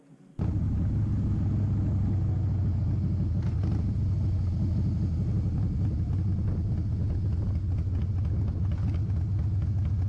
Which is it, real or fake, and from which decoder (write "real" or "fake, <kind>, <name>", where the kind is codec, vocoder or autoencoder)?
real